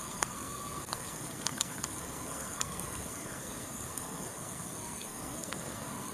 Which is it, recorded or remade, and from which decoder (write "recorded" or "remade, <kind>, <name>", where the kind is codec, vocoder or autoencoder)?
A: remade, codec, SNAC